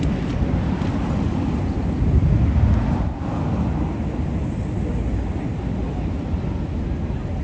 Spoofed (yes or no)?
no